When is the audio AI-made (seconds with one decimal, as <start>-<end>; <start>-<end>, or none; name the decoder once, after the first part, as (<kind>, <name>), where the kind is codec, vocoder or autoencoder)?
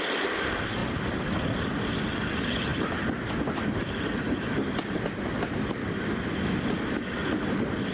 none